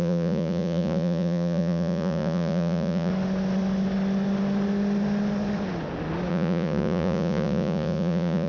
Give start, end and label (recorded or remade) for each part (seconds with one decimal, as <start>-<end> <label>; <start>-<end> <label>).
0.0-3.1 remade; 3.1-6.3 recorded; 6.3-8.5 remade